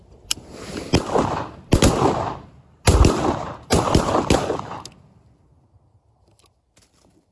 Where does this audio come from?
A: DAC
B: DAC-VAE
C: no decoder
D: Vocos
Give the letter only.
C